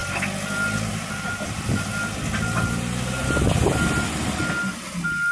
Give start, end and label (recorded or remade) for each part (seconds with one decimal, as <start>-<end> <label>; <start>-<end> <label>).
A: 0.0-0.9 recorded; 0.9-1.9 remade; 1.9-5.3 recorded